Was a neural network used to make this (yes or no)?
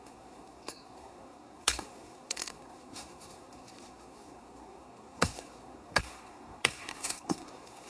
yes